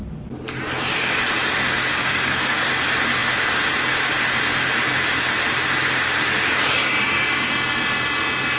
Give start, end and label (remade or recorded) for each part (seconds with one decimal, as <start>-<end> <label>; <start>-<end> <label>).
0.0-1.8 recorded; 1.8-2.7 remade; 2.7-6.8 recorded; 6.8-7.5 remade; 7.5-8.6 recorded